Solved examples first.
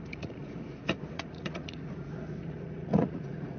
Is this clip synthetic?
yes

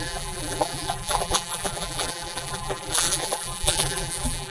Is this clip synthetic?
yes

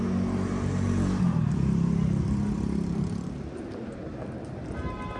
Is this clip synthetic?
no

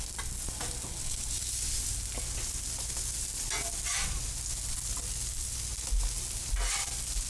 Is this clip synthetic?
no